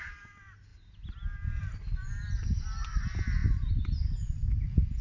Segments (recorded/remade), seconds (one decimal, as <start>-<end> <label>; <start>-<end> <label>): 0.0-5.0 recorded